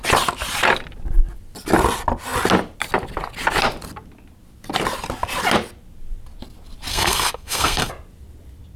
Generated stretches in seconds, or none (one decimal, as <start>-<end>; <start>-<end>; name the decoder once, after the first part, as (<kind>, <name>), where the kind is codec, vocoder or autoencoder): 6.9-7.9 (codec, SNAC)